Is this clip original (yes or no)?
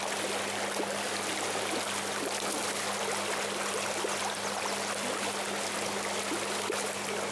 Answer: yes